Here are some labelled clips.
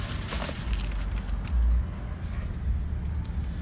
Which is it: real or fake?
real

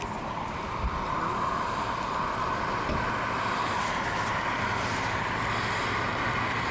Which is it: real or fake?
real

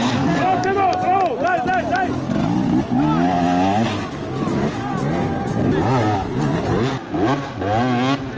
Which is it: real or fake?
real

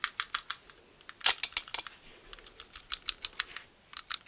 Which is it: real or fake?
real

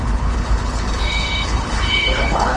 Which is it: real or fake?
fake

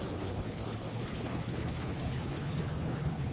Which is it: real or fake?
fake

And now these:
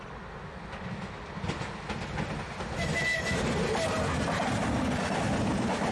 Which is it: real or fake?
real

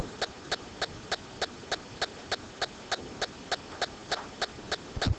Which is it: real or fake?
real